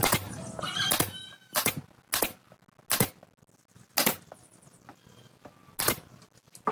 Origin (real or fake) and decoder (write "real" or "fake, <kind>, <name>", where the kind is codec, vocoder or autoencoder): real